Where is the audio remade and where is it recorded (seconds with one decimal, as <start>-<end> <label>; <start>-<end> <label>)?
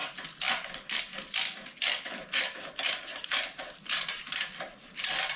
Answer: 0.0-2.2 recorded; 2.2-5.4 remade